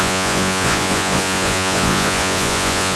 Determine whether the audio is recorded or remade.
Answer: remade